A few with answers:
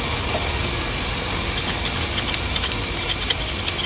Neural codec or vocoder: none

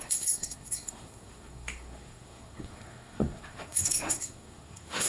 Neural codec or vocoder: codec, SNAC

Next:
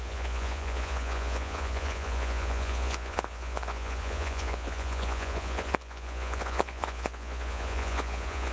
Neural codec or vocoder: vocoder, Vocos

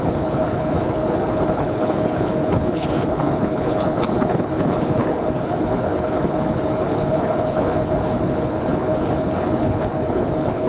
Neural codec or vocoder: codec, HILCodec